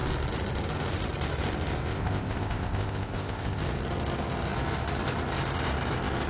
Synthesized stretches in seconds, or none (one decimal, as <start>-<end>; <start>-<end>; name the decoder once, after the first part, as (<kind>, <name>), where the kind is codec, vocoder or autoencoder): 1.9-3.6 (codec, ZipCodec)